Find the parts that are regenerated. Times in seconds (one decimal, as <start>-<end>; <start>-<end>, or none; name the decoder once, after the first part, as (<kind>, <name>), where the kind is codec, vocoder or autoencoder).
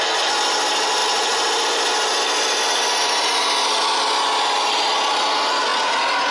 none